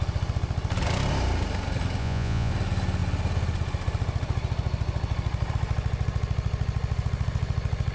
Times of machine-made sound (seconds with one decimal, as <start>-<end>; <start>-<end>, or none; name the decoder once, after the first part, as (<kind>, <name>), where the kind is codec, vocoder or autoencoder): 2.0-2.5 (vocoder, Vocos)